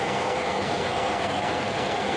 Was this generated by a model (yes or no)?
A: yes